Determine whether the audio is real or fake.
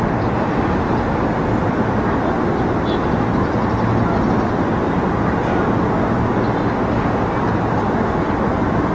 real